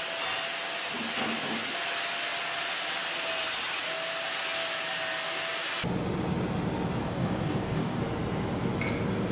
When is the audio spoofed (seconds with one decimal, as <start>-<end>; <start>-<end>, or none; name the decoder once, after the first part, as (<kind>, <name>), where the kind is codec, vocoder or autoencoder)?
7.0-8.0 (codec, DAC)